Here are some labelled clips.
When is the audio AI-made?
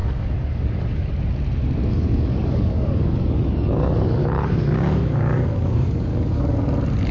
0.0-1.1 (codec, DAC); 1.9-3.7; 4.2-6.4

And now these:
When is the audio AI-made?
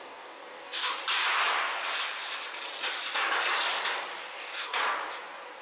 0.0-0.9 (codec, DAC); 4.3-4.8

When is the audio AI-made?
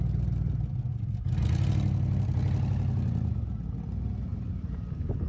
none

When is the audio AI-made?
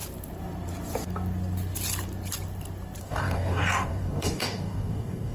3.0-5.3 (codec, DAC)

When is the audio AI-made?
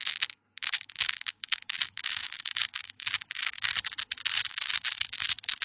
0.6-3.7 (codec, DAC); 4.5-5.6